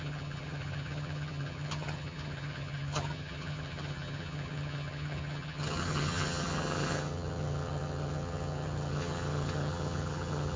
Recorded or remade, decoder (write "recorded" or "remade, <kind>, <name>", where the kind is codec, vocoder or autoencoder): remade, vocoder, HiFi-GAN